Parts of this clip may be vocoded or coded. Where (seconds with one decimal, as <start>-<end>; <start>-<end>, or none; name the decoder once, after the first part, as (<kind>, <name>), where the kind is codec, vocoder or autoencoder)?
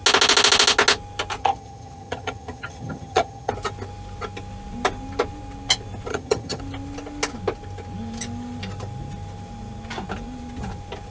1.4-3.5 (vocoder, HiFi-GAN); 6.1-6.6